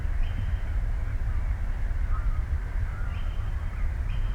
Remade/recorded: remade